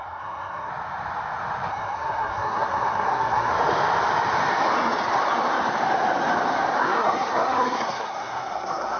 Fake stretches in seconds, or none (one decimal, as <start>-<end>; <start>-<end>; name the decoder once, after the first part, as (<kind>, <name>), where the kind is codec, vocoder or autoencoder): 0.0-0.7 (codec, SNAC); 1.7-3.5; 6.8-9.0